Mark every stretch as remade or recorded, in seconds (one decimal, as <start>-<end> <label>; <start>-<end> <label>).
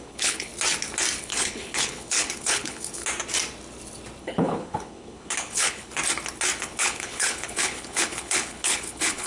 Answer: 0.0-0.5 remade; 0.5-1.2 recorded; 1.2-3.0 remade; 3.0-4.2 recorded; 4.2-6.0 remade; 6.0-6.6 recorded; 6.6-9.3 remade